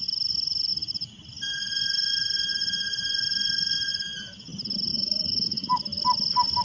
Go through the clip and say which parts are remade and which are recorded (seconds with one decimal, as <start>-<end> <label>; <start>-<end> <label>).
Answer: 0.0-4.9 recorded; 4.9-5.8 remade; 5.8-6.6 recorded